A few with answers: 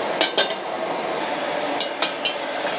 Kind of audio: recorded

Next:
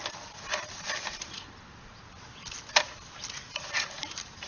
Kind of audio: recorded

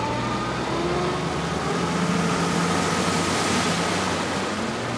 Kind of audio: recorded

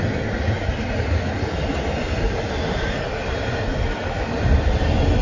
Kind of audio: recorded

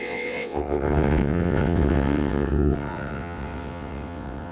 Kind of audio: remade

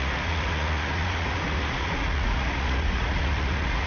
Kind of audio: remade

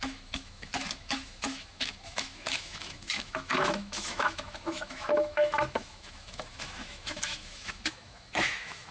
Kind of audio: remade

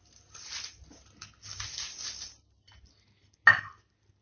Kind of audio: recorded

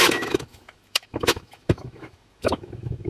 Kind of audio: remade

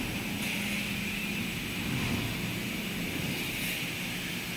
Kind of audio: recorded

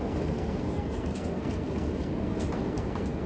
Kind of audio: remade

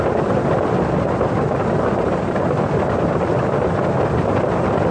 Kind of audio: recorded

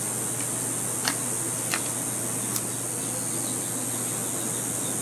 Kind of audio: recorded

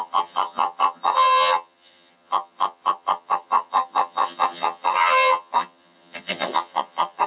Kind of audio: remade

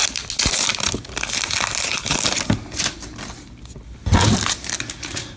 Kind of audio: recorded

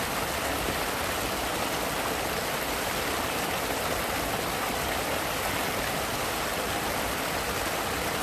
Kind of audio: recorded